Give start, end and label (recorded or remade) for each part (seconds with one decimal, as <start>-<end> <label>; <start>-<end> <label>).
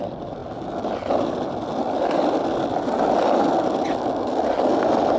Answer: 0.0-5.2 recorded